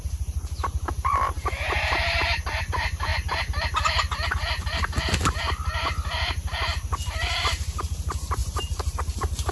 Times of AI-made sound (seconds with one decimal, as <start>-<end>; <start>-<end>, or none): 0.0-3.1; 7.4-9.5